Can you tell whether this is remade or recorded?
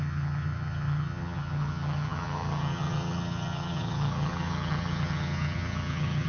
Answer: remade